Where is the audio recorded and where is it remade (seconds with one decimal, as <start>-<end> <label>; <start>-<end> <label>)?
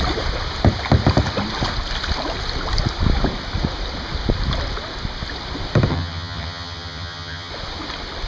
0.0-5.9 recorded; 5.9-7.5 remade; 7.5-8.3 recorded